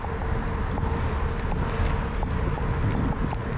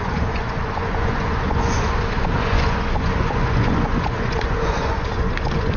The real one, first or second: first